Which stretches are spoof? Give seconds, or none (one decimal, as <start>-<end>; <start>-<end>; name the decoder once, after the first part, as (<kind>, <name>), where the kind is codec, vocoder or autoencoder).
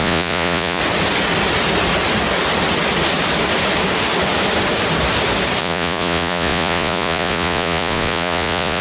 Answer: 0.0-0.8 (vocoder, Vocos); 5.6-8.8